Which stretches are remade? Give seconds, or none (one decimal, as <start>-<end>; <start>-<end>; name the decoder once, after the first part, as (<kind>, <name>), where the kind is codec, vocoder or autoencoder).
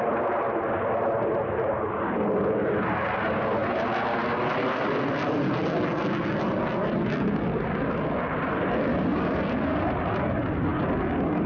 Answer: none